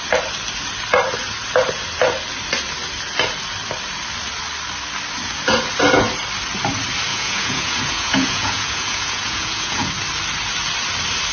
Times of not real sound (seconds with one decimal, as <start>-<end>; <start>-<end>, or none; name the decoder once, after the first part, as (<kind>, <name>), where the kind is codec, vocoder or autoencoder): 7.1-9.9 (vocoder, Vocos)